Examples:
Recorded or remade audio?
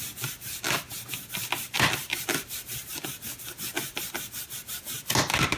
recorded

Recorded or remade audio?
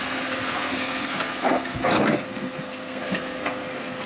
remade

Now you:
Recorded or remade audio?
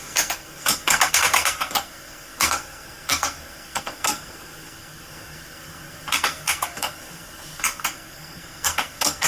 remade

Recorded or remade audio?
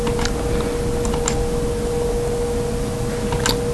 recorded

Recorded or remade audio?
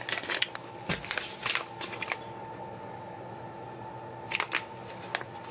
recorded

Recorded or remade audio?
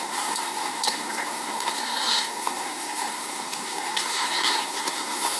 remade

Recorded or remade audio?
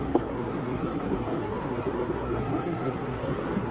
remade